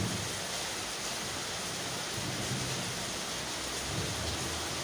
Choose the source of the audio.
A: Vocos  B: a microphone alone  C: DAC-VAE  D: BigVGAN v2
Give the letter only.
B